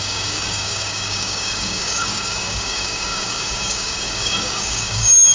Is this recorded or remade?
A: remade